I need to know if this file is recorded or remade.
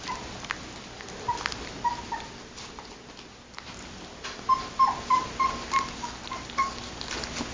recorded